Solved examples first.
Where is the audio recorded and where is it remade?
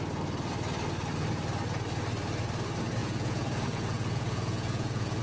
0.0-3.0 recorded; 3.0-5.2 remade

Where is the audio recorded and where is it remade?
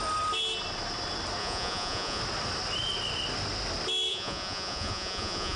0.0-1.4 recorded; 1.4-2.2 remade; 2.2-4.1 recorded; 4.1-5.6 remade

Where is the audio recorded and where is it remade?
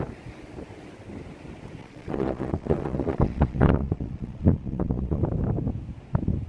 0.0-1.8 recorded; 1.8-5.2 remade; 5.2-6.5 recorded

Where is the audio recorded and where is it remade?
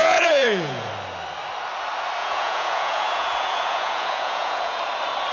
0.0-0.9 remade; 0.9-2.2 recorded; 2.2-4.8 remade; 4.8-5.3 recorded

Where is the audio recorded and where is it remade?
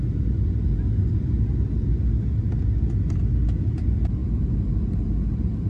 0.0-5.7 recorded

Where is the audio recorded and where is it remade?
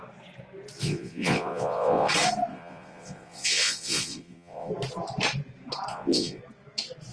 0.0-0.8 recorded; 0.8-2.1 remade; 2.1-2.5 recorded; 2.5-4.7 remade; 4.7-5.9 recorded; 5.9-6.4 remade; 6.4-7.1 recorded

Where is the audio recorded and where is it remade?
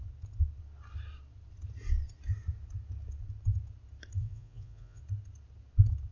0.0-4.2 recorded; 4.2-5.0 remade; 5.0-6.1 recorded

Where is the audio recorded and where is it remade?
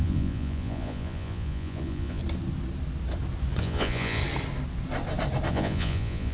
0.0-2.2 remade; 2.2-3.6 recorded; 3.6-4.2 remade; 4.2-5.5 recorded; 5.5-6.3 remade